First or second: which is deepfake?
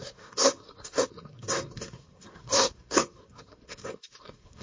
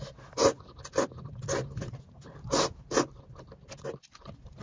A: first